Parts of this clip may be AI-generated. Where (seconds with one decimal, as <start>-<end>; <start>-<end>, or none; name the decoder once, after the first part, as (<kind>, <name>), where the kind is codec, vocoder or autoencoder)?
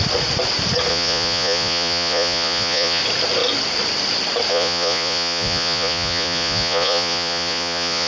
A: 0.9-3.0 (vocoder, Vocos); 4.5-8.1